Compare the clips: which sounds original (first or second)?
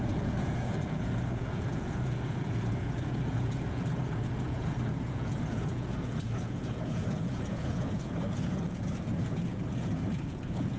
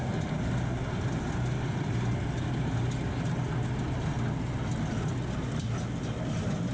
second